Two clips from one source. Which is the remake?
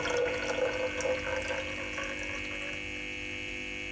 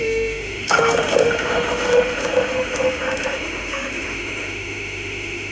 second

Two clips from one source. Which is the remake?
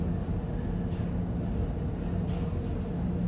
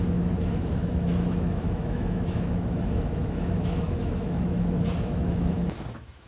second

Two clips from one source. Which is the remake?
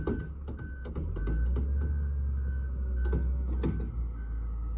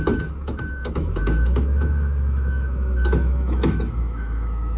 second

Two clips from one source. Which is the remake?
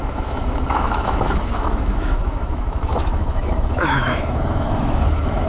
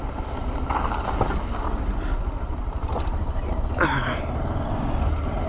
first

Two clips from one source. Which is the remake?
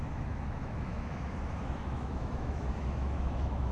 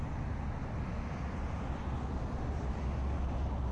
first